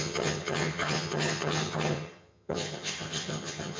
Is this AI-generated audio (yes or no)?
yes